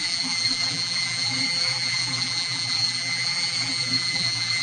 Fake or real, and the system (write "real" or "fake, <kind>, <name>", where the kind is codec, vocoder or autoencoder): fake, vocoder, BigVGAN v2